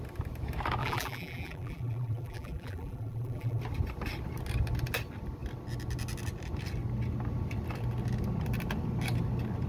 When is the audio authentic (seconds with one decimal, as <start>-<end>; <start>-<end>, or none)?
0.0-0.8; 3.6-9.7